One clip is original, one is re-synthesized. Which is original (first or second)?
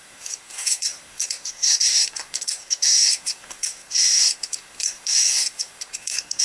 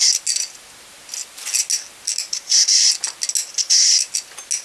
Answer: second